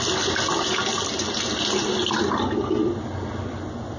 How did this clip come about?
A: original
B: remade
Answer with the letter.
A